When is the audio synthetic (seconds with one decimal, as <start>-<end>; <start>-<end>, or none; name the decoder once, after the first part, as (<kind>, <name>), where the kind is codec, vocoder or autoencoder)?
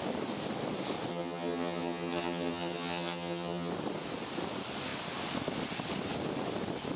1.1-3.7 (vocoder, HiFi-GAN)